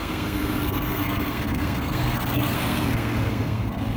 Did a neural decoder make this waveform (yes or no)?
yes